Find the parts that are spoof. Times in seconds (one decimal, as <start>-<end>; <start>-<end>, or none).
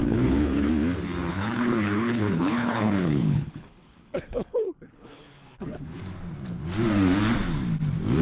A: 0.0-0.7; 1.3-6.0